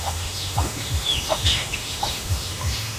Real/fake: fake